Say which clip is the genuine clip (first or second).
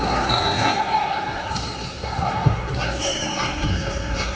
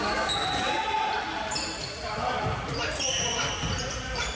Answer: second